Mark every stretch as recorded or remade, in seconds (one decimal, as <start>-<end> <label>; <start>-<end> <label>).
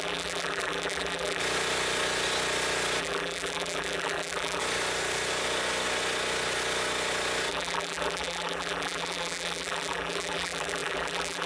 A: 0.0-1.4 remade; 1.4-3.0 recorded; 3.0-4.6 remade; 4.6-7.5 recorded; 7.5-11.5 remade